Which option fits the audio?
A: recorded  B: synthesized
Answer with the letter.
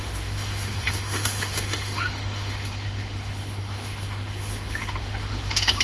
B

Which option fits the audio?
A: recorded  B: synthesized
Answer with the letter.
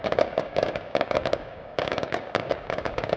B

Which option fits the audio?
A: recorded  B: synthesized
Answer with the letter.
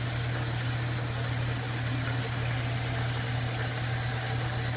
A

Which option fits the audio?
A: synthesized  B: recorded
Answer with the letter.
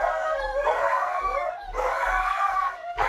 A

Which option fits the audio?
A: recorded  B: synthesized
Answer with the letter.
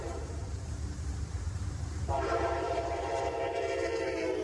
B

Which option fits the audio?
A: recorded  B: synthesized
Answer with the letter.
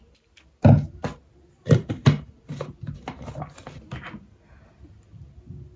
A